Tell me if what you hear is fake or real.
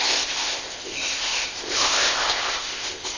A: fake